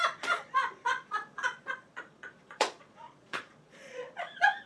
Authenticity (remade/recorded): remade